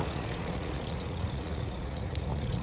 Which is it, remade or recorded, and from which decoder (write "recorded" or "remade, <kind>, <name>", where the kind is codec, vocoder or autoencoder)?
remade, vocoder, Vocos